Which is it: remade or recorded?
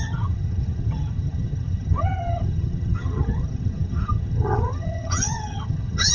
remade